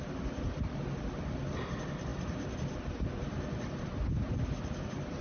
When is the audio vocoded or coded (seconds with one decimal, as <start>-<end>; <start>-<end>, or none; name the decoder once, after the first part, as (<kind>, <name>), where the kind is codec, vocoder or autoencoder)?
none